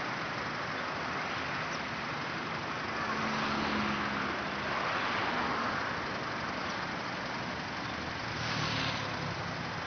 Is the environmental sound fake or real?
real